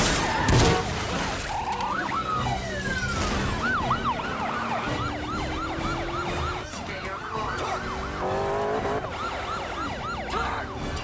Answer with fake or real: real